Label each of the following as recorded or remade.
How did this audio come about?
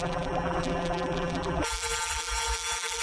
remade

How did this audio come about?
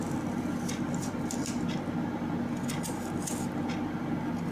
recorded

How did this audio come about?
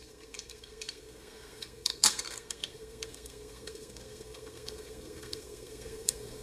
remade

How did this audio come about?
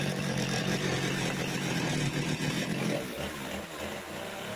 recorded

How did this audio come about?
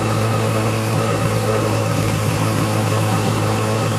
remade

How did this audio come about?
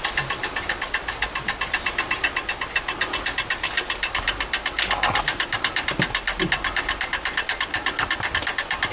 recorded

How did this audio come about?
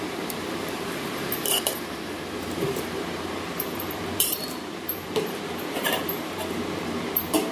remade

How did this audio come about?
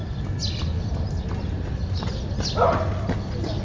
recorded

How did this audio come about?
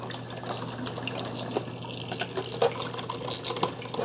recorded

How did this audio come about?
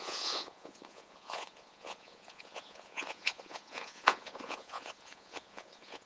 remade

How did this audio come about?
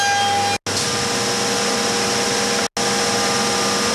recorded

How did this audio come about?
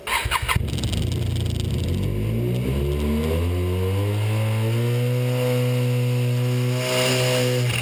recorded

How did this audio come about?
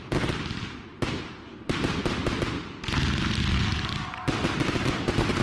recorded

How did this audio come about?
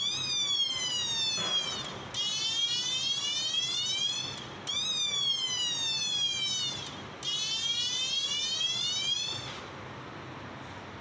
recorded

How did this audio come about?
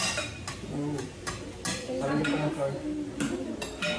recorded